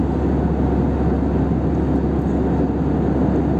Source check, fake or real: real